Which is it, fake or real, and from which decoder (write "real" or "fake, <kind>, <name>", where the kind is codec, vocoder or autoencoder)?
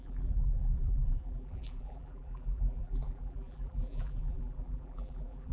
fake, vocoder, BigVGAN v2